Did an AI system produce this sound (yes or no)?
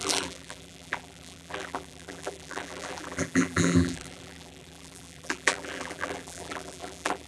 yes